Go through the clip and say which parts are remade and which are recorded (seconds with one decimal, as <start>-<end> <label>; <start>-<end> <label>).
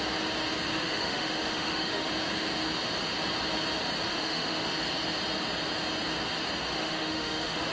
0.0-0.7 recorded; 0.7-2.1 remade; 2.1-4.1 recorded; 4.1-4.7 remade; 4.7-6.7 recorded; 6.7-7.7 remade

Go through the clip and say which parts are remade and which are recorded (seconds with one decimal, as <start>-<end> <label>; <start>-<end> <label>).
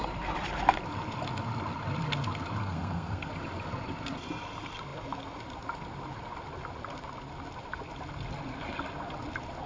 0.0-2.6 recorded; 2.6-3.3 remade; 3.3-9.7 recorded